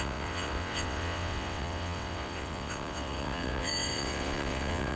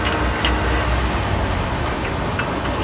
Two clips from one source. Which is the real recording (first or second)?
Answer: second